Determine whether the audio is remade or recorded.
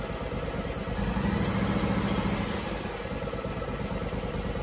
recorded